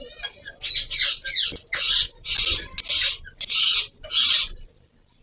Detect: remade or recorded recorded